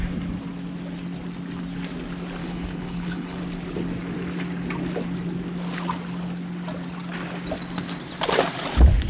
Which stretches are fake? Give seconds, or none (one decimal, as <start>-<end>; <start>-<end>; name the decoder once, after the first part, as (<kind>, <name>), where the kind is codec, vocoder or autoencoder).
2.4-3.4 (codec, HILCodec)